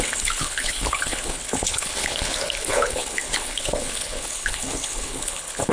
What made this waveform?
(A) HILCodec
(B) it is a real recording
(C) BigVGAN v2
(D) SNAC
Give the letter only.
A